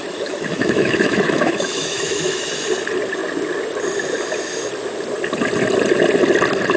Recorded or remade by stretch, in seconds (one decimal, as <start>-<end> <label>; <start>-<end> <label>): 0.0-2.5 remade; 2.5-6.8 recorded